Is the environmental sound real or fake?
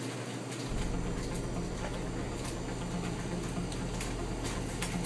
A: real